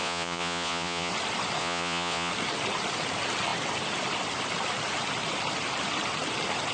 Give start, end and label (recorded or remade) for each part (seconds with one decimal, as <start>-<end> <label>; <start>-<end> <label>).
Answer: 0.0-1.1 remade; 1.1-1.6 recorded; 1.6-2.3 remade; 2.3-6.7 recorded